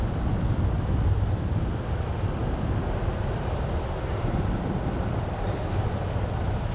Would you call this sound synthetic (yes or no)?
no